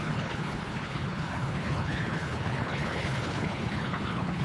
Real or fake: fake